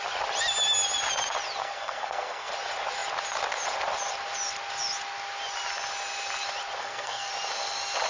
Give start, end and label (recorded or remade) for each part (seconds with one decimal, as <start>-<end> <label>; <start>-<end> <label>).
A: 0.0-1.6 recorded; 1.6-2.5 remade; 2.5-6.8 recorded; 6.8-7.3 remade; 7.3-8.1 recorded